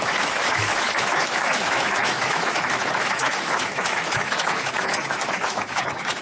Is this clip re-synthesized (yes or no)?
yes